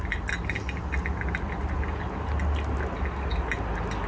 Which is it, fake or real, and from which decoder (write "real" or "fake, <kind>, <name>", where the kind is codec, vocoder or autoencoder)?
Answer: real